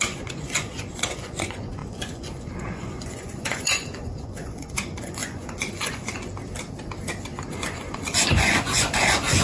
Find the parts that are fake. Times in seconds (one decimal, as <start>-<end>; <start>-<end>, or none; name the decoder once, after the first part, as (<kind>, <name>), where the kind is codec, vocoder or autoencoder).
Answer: 0.0-6.3 (vocoder, Vocos); 7.5-9.4